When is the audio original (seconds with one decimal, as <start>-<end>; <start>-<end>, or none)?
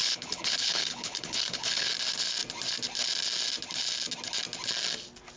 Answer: 1.9-5.4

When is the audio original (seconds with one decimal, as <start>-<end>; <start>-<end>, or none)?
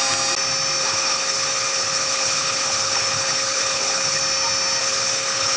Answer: 0.0-0.8; 4.2-4.8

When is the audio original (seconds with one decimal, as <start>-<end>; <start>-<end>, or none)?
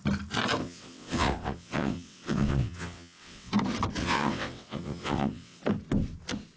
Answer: 0.0-0.6; 3.5-4.0; 5.6-6.6